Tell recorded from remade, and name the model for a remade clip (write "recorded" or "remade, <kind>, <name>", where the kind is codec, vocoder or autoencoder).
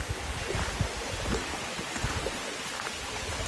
recorded